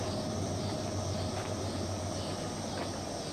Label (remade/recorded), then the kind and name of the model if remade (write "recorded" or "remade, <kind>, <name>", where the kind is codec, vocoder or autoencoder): recorded